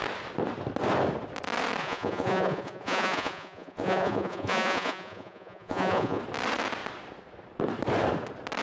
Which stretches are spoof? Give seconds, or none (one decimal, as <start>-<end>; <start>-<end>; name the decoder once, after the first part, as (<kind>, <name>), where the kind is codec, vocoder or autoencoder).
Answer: 1.8-6.2 (vocoder, Vocos)